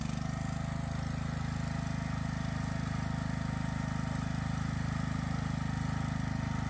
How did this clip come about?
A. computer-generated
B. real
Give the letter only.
B